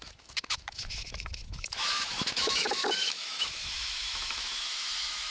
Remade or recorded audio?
remade